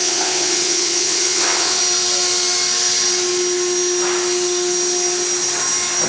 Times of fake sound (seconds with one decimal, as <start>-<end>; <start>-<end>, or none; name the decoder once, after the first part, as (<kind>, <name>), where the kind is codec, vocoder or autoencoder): 0.0-1.8 (vocoder, WaveNeXt)